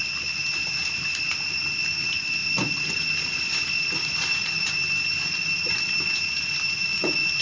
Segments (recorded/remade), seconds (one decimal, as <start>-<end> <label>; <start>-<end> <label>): 0.0-0.4 recorded; 0.4-1.6 remade; 1.6-2.4 recorded; 2.4-6.7 remade; 6.7-7.4 recorded